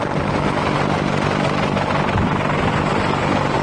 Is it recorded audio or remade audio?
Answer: recorded